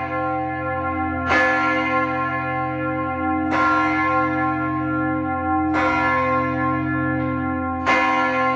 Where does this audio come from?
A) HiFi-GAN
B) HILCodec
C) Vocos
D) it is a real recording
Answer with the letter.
D